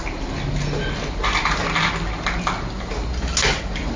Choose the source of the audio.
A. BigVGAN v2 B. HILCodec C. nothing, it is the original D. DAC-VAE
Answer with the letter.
C